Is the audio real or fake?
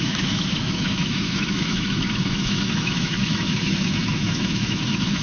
fake